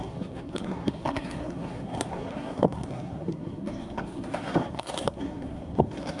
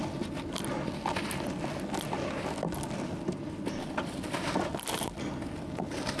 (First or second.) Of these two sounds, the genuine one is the second